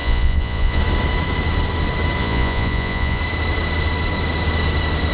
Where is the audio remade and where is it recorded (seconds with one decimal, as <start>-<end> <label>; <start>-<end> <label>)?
0.0-0.8 remade; 0.8-2.2 recorded; 2.2-3.2 remade; 3.2-5.1 recorded